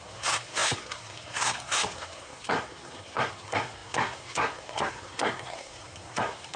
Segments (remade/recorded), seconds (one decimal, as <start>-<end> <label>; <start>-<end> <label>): 0.0-6.6 remade

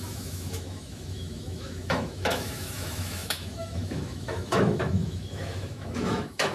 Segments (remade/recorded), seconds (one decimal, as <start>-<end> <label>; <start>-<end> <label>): 0.0-6.5 remade